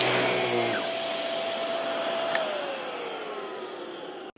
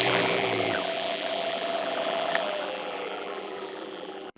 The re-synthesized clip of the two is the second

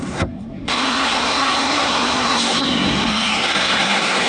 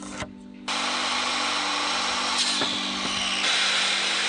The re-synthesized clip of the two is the first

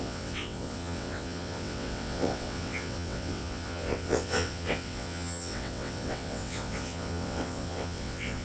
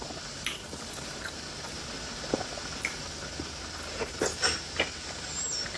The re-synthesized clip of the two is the first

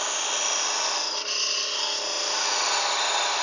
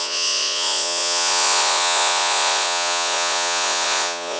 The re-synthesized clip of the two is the second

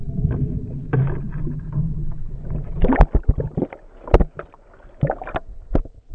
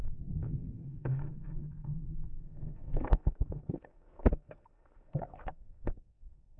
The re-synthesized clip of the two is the second